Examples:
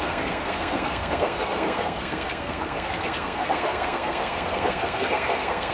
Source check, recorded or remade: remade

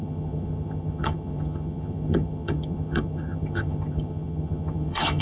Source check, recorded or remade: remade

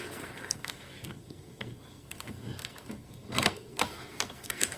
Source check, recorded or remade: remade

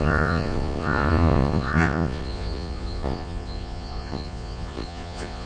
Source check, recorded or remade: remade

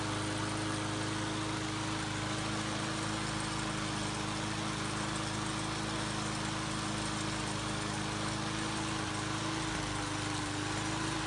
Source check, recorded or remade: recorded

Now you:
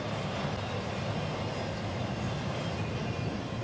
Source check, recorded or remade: recorded